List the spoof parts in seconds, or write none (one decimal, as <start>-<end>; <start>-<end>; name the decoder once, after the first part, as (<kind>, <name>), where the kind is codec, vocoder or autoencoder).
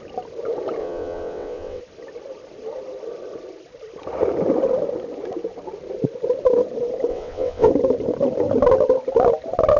0.8-1.8 (vocoder, WaveNeXt); 7.1-7.7